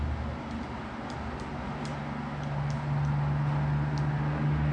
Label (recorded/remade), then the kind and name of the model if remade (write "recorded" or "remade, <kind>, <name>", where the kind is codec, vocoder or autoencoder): recorded